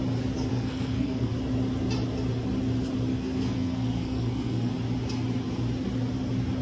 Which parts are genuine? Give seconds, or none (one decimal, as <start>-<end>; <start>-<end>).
0.0-0.5; 1.3-3.1; 4.7-6.6